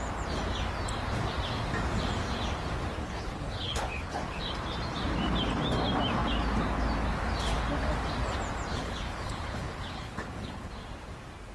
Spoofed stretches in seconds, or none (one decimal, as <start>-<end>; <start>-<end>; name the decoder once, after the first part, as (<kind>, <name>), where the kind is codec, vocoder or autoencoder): 3.0-4.4 (codec, HILCodec); 8.7-10.7